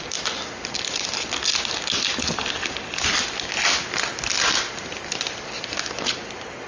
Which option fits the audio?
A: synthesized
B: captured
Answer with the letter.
B